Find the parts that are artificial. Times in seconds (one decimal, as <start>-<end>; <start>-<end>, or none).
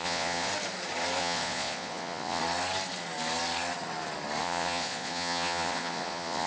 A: 0.0-0.5; 1.2-2.4; 4.4-6.5